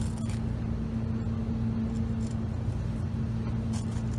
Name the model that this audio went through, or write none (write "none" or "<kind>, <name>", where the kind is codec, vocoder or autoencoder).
none